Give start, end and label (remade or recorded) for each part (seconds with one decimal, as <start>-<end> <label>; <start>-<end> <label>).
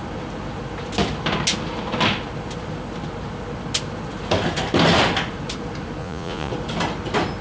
0.0-6.0 recorded; 6.0-6.5 remade; 6.5-7.4 recorded